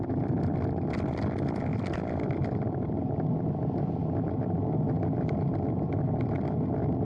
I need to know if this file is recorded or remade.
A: recorded